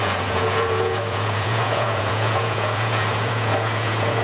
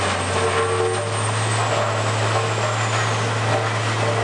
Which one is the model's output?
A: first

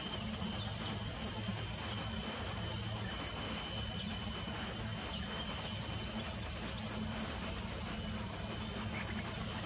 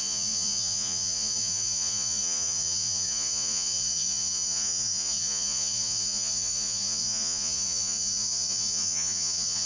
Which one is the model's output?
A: second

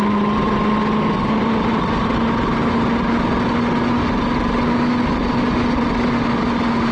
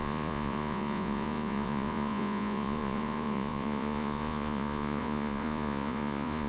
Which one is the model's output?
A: second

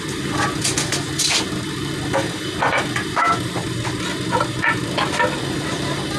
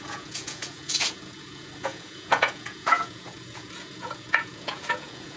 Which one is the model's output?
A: second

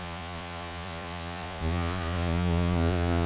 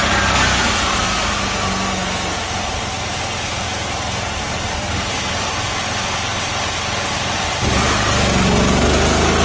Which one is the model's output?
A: first